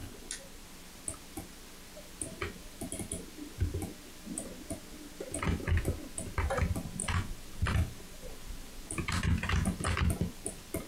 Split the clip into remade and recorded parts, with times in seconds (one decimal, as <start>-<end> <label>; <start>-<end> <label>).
0.0-0.7 remade; 0.7-2.6 recorded; 2.6-3.2 remade; 3.2-7.0 recorded; 7.0-10.9 remade